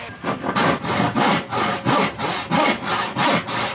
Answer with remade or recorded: recorded